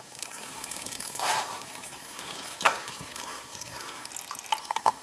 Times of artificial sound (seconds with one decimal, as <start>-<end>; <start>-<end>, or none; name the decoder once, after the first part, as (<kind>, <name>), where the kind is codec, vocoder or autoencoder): 0.0-4.1 (codec, SNAC); 4.6-5.0